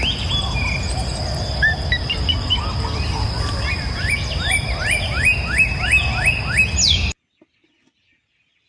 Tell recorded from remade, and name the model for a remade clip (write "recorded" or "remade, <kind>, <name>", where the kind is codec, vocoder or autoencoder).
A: recorded